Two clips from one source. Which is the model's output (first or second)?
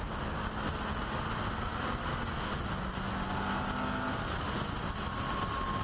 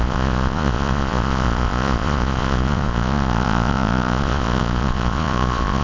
second